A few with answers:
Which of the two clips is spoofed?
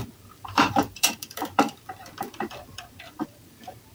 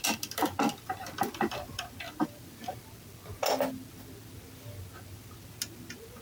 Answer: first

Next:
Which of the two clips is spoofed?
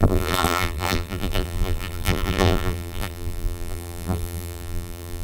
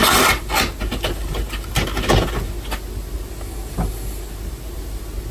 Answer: first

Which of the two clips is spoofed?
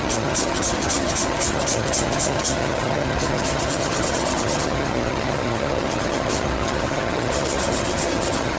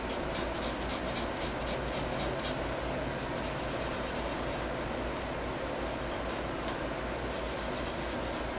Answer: first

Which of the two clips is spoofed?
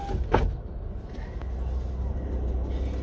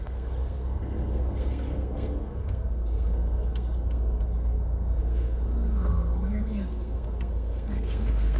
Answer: second